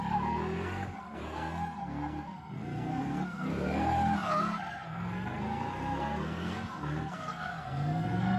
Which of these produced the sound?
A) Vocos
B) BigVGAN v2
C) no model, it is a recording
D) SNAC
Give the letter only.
D